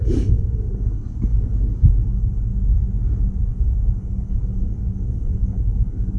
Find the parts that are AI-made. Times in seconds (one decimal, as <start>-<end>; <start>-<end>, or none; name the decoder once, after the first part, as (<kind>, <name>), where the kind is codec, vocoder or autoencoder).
0.0-2.5 (codec, DAC); 3.5-6.2